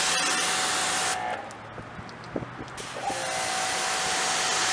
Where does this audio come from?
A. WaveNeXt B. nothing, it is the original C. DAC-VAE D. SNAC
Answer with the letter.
B